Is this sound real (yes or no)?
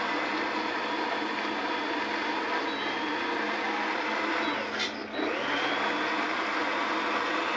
yes